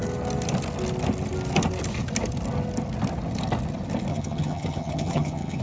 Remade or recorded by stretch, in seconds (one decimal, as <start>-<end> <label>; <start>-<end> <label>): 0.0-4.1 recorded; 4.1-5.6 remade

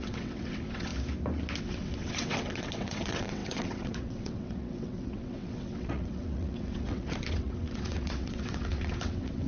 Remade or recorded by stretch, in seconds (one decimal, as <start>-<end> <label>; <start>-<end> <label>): 0.0-0.9 remade; 0.9-1.6 recorded; 1.6-9.5 remade

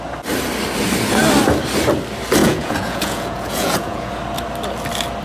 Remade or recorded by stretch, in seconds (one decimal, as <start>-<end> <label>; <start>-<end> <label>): 0.0-2.4 recorded; 2.4-4.1 remade; 4.1-5.2 recorded

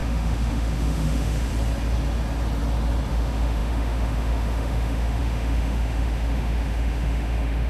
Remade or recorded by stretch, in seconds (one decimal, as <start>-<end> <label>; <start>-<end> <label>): 0.0-1.5 remade; 1.5-3.1 recorded; 3.1-7.7 remade

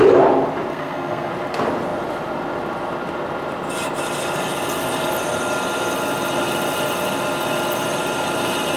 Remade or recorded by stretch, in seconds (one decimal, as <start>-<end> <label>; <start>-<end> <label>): 0.0-0.7 recorded; 0.7-1.3 remade; 1.3-8.8 recorded

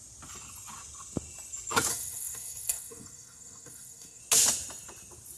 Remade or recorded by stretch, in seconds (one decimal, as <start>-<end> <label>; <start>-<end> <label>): 0.0-1.9 recorded; 1.9-4.2 remade; 4.2-5.4 recorded

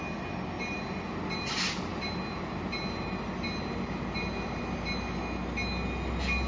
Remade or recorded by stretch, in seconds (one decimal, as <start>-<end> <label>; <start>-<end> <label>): 0.0-6.5 recorded

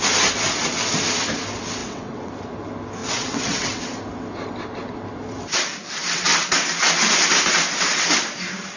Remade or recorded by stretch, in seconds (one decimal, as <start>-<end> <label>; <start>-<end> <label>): 0.0-1.8 recorded; 1.8-2.3 remade; 2.3-3.0 recorded; 3.0-3.8 remade; 3.8-8.8 recorded